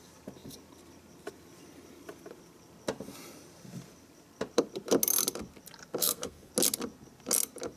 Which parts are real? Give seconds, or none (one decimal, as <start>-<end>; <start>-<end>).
0.0-6.0; 6.5-7.8